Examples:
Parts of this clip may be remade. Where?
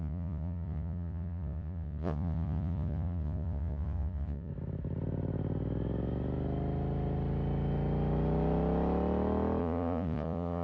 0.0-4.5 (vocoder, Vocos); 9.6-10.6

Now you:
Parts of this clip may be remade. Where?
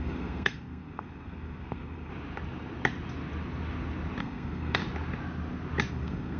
0.0-2.1 (codec, SNAC); 4.2-4.8; 5.9-6.4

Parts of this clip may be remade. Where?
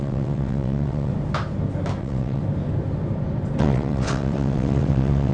0.0-1.1 (vocoder, WaveNeXt); 2.0-2.4; 3.6-5.3